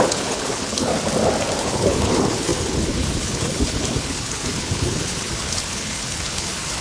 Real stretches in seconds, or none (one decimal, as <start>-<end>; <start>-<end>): 0.9-1.6